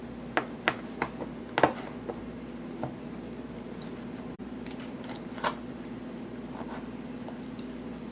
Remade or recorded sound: recorded